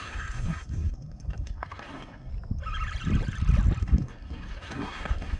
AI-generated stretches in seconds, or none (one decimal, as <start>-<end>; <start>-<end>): 0.0-2.3; 3.8-5.4